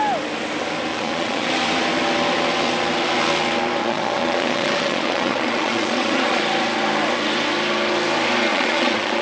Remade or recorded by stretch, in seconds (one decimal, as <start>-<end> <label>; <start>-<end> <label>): 0.0-0.9 recorded; 0.9-1.5 remade; 1.5-3.8 recorded; 3.8-6.4 remade; 6.4-8.5 recorded; 8.5-9.2 remade